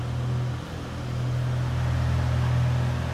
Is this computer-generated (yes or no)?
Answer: no